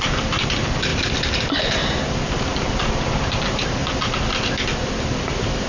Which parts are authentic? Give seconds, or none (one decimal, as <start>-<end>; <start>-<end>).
0.9-2.1; 3.8-5.2